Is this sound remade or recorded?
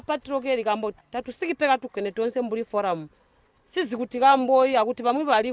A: recorded